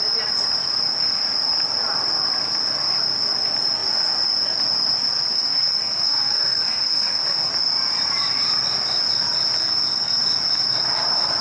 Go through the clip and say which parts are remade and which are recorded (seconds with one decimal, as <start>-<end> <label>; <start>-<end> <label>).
0.0-5.3 recorded; 5.3-7.5 remade; 7.5-9.6 recorded; 9.6-10.2 remade; 10.2-11.4 recorded